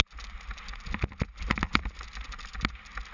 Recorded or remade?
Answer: recorded